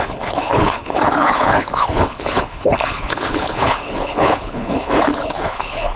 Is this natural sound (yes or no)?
no